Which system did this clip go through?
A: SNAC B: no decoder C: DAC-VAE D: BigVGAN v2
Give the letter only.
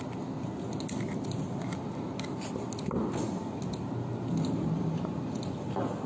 B